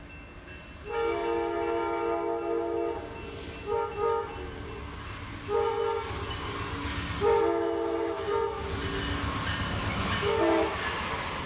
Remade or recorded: recorded